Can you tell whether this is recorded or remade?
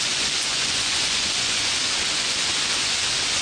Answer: remade